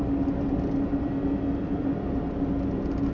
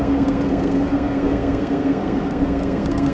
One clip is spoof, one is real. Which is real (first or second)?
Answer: first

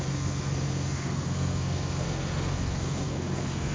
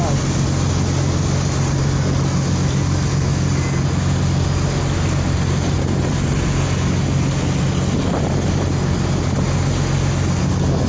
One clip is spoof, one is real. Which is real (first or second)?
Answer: second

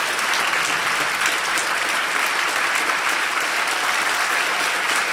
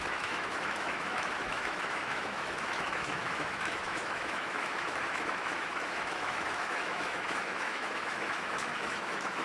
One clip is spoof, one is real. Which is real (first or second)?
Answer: first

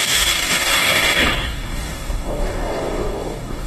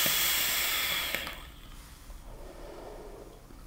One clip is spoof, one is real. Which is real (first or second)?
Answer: second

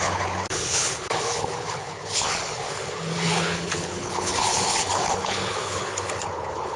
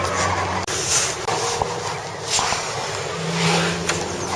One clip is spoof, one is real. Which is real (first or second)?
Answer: second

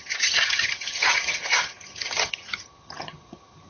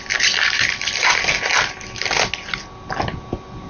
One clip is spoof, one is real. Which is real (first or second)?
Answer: second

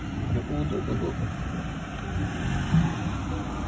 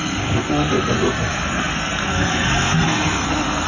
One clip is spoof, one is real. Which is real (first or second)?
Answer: first